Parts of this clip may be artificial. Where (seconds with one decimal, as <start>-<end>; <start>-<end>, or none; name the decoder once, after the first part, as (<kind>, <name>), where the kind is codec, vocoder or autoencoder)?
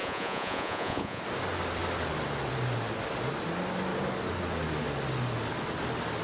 0.0-1.2 (vocoder, Vocos)